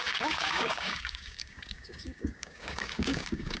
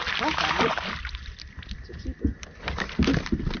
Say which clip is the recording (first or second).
second